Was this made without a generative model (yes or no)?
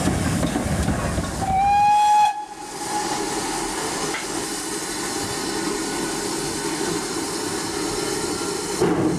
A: yes